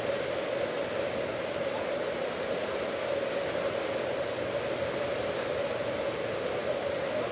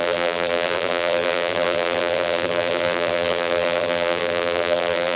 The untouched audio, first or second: first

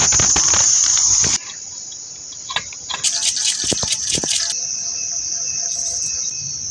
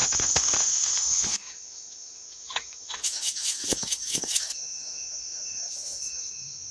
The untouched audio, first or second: first